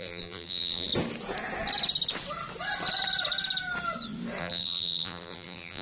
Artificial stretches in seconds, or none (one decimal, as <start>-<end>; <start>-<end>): 0.0-0.9; 4.4-5.8